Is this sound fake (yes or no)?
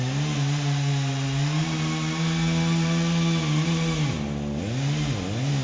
no